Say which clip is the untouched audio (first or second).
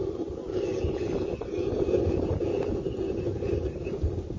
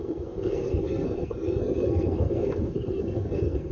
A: first